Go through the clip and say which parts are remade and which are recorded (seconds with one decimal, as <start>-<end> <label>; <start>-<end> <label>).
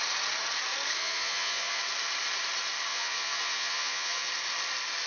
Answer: 0.0-1.0 recorded; 1.0-1.8 remade; 1.8-2.9 recorded; 2.9-4.3 remade; 4.3-5.1 recorded